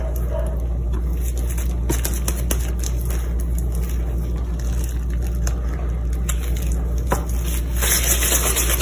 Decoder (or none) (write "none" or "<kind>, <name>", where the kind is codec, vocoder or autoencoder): none